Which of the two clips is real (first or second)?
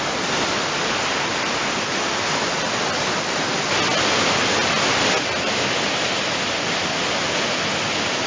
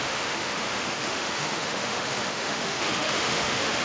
first